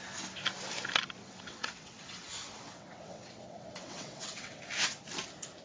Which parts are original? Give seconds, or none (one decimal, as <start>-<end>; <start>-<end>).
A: 0.0-1.2; 4.6-5.6